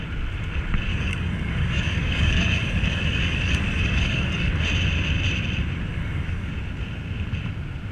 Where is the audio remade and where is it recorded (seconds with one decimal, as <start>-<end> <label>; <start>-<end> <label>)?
0.0-0.9 recorded; 0.9-4.5 remade; 4.5-5.9 recorded; 5.9-6.5 remade; 6.5-7.9 recorded